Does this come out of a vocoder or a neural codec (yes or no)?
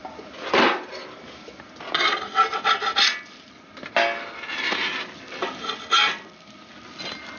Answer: no